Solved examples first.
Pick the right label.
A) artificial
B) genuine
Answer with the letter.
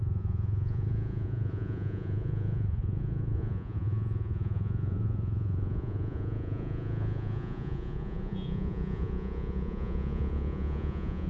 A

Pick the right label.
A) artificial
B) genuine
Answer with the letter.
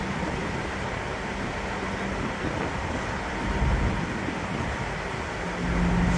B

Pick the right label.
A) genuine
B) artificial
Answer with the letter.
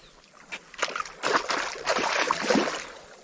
A